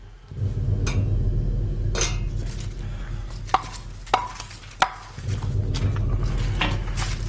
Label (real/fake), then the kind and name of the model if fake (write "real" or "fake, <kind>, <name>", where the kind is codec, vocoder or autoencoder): real